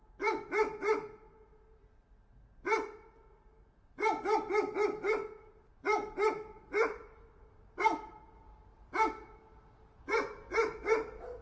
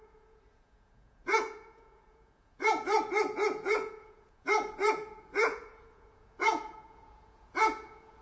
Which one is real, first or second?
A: first